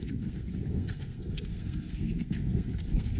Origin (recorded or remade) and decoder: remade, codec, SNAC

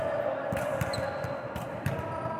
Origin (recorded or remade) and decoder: recorded